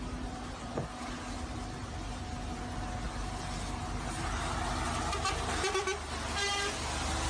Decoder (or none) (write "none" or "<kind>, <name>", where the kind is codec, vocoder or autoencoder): none